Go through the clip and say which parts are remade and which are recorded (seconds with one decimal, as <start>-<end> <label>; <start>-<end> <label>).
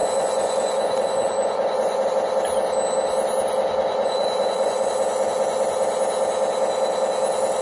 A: 0.0-2.1 remade; 2.1-3.9 recorded; 3.9-4.9 remade; 4.9-7.6 recorded